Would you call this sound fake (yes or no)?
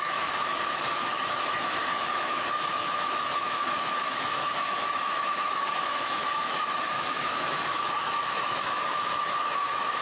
yes